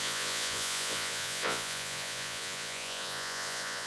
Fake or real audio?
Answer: fake